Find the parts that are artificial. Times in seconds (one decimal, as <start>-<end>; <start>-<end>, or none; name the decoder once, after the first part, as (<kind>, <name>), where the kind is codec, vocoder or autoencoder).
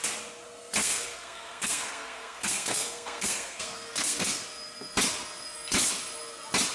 0.8-4.4 (codec, SNAC)